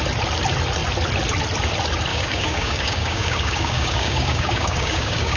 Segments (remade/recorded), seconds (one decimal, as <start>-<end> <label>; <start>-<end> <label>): 0.0-2.1 recorded; 2.1-5.4 remade